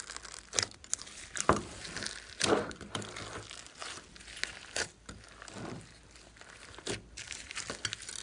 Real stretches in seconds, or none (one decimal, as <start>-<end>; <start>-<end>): 0.0-8.2